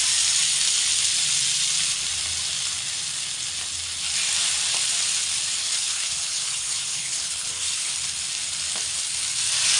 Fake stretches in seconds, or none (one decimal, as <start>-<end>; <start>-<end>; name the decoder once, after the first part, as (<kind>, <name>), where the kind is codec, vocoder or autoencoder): 5.6-7.9 (codec, HILCodec)